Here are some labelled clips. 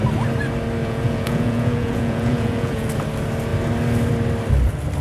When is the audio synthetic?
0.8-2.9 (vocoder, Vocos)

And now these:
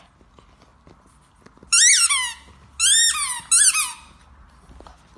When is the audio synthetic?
none

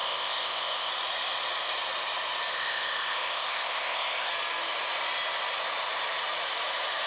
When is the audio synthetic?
0.0-0.9 (codec, ZipCodec); 2.5-4.3

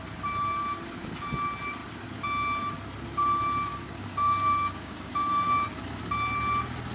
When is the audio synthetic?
3.7-6.0 (codec, DAC)

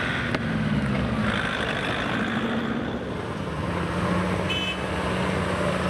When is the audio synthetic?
none